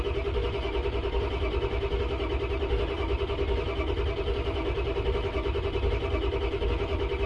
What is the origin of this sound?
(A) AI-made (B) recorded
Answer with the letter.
B